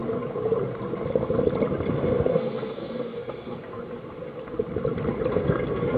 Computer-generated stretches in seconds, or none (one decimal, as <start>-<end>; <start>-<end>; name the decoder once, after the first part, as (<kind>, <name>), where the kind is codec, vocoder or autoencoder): 1.9-3.8 (codec, SNAC); 5.3-6.0